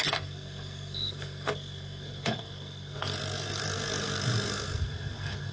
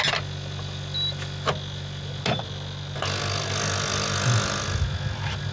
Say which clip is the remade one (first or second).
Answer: first